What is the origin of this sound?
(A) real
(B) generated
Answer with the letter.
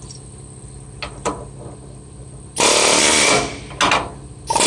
A